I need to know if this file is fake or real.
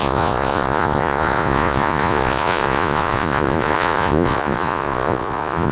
fake